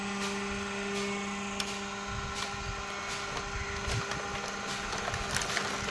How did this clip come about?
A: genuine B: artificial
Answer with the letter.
A